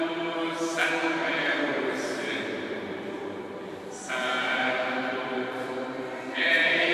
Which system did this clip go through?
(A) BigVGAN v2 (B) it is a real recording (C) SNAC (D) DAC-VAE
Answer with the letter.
A